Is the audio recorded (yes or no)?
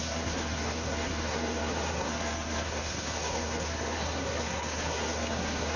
no